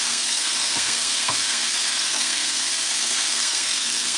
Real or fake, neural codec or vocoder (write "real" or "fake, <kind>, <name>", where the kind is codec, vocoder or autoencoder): fake, codec, SNAC